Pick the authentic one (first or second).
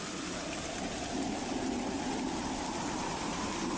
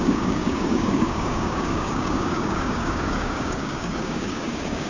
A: first